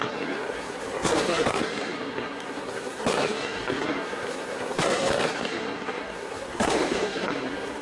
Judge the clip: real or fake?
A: fake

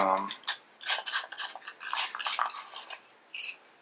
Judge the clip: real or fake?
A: real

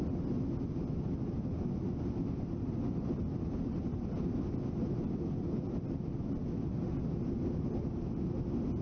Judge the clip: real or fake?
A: real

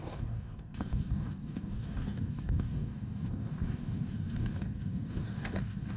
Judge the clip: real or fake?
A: fake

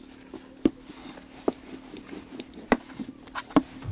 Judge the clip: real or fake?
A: real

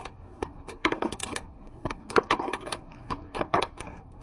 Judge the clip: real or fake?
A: fake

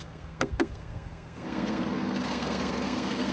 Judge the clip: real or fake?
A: fake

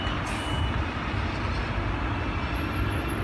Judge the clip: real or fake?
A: real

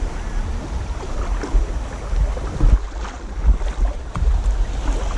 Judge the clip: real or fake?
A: real